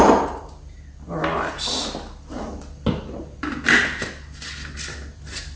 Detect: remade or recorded recorded